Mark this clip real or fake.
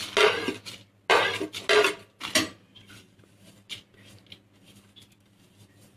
real